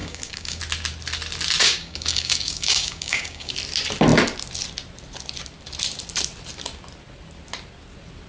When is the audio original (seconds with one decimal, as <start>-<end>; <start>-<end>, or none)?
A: 0.6-1.6; 3.5-8.3